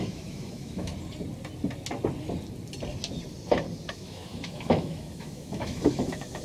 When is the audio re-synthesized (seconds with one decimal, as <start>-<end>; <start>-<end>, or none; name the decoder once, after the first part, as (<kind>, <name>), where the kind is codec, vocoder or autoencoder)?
0.0-0.9 (autoencoder, DAC-VAE); 3.9-6.4